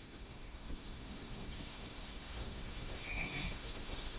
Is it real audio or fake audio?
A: fake